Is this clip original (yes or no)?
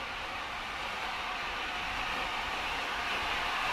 yes